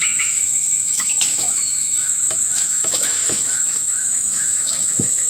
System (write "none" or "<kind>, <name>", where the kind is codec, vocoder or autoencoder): autoencoder, DAC-VAE